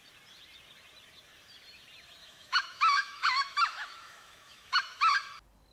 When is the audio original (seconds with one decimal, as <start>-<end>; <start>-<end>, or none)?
0.0-2.2; 5.1-5.7